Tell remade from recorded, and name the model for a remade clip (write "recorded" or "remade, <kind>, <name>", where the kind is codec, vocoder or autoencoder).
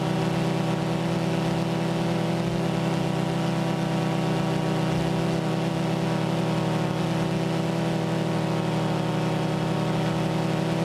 recorded